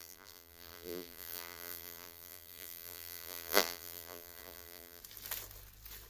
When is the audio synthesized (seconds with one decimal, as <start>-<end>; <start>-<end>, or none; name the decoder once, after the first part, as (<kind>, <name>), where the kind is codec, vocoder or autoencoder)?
0.0-5.0 (vocoder, BigVGAN v2)